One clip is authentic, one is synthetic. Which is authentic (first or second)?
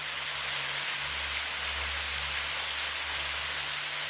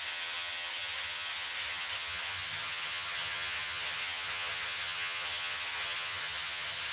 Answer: first